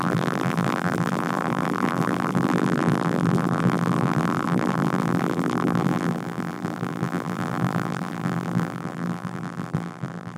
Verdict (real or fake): fake